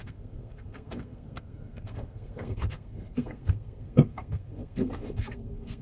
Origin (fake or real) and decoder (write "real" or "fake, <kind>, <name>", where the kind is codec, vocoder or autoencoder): fake, codec, SNAC